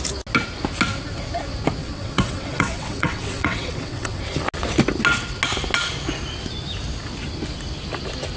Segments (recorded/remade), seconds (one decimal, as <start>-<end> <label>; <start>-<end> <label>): 0.0-1.8 recorded; 1.8-4.2 remade; 4.2-8.4 recorded